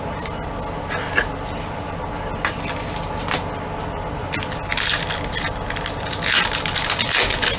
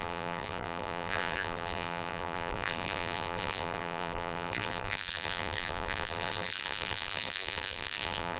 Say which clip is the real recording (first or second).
first